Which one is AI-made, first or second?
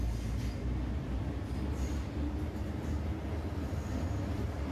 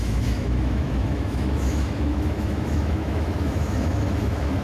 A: second